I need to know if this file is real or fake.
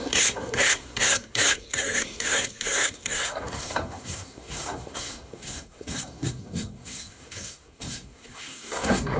fake